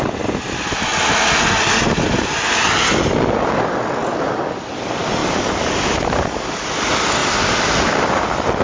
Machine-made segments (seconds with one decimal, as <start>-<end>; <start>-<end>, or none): none